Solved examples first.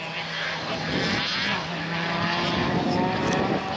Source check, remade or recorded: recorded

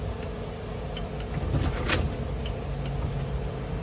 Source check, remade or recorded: recorded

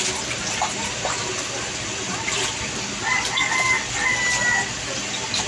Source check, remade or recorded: recorded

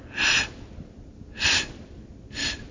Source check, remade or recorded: recorded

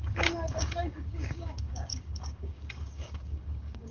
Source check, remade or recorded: remade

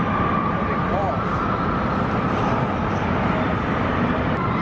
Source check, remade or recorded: recorded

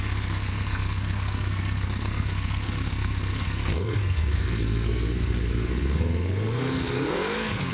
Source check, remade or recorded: remade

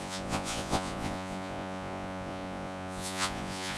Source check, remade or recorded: remade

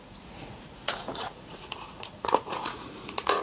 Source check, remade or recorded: remade